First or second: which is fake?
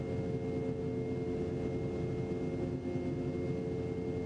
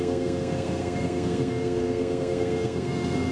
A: second